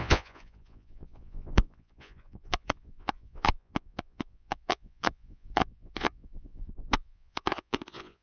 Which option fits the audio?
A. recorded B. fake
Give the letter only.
B